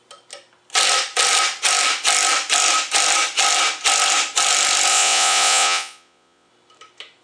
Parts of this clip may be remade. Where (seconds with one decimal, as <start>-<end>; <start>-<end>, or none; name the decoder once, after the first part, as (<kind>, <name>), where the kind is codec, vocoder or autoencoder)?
4.9-6.5 (vocoder, Vocos)